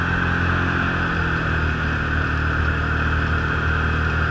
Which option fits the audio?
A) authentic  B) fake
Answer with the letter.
A